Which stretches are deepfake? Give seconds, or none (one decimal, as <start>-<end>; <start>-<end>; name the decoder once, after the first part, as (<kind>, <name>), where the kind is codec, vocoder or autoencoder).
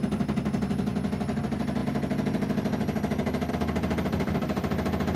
none